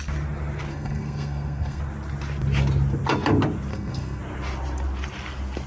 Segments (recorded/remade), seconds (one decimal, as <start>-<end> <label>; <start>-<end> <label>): 0.0-0.7 recorded; 0.7-1.8 remade; 1.8-3.7 recorded; 3.7-4.2 remade; 4.2-5.7 recorded